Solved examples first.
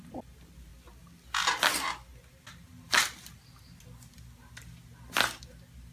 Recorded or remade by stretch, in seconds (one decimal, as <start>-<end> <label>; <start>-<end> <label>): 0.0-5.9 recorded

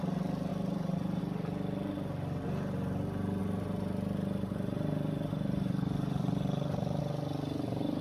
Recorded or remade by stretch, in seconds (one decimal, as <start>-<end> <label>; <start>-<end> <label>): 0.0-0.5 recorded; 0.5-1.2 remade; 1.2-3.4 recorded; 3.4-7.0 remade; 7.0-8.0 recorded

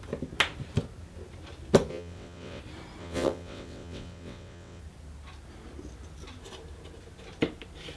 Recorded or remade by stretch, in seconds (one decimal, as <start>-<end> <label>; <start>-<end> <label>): 0.0-1.9 recorded; 1.9-2.6 remade; 2.6-3.0 recorded; 3.0-4.8 remade; 4.8-8.0 recorded

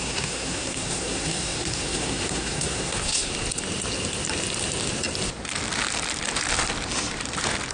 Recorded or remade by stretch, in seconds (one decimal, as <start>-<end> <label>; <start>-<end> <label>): 0.0-3.3 remade; 3.3-7.7 recorded

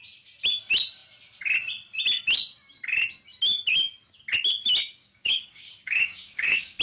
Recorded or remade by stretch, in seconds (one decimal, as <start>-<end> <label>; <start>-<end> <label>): 0.0-5.0 recorded; 5.0-6.8 remade